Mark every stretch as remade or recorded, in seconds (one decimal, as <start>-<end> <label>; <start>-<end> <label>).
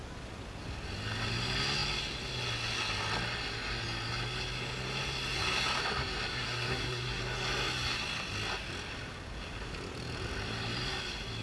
0.0-6.3 recorded; 6.3-7.2 remade; 7.2-11.4 recorded